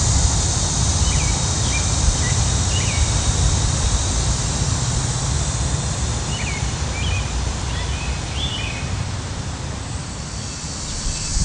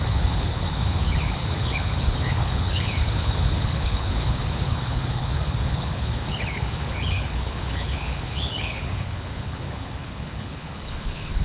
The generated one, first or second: second